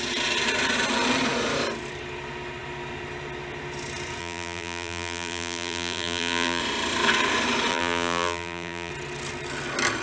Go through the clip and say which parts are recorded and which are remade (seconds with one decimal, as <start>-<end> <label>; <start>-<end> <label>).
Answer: 0.0-4.2 recorded; 4.2-6.6 remade; 6.6-7.7 recorded; 7.7-8.9 remade; 8.9-10.0 recorded